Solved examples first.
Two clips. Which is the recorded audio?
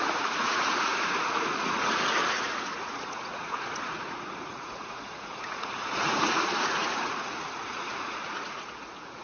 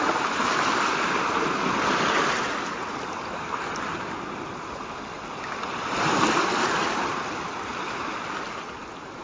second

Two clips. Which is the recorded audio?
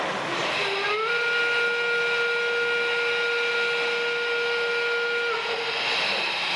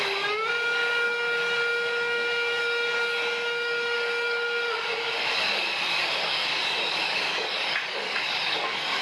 first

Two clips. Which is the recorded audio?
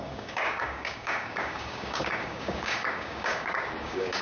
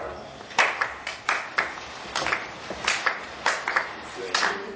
second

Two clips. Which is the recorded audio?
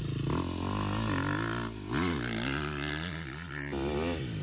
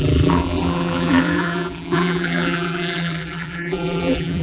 first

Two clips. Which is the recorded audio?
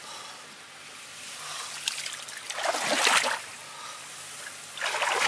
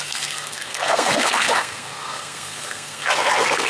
first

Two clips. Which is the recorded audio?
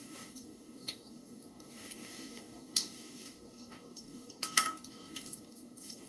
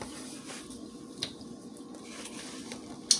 second